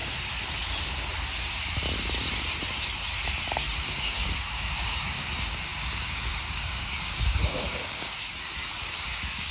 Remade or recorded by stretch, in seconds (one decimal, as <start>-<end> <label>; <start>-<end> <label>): 0.0-3.8 recorded; 3.8-8.2 remade; 8.2-8.8 recorded; 8.8-9.5 remade